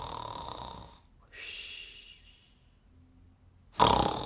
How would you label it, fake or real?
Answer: real